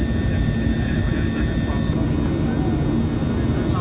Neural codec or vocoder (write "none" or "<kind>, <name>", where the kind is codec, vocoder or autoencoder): none